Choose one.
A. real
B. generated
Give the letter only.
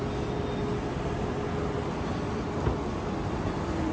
A